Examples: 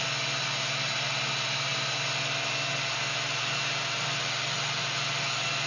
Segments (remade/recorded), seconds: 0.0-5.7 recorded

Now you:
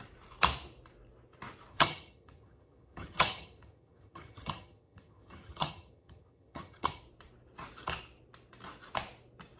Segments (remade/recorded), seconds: 0.0-1.7 recorded; 1.7-7.0 remade; 7.0-9.6 recorded

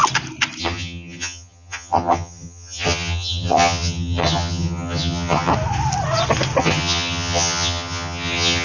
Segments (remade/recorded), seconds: 0.0-0.6 recorded; 0.6-5.5 remade; 5.5-6.6 recorded; 6.6-8.6 remade